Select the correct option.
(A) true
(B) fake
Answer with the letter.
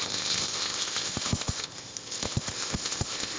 B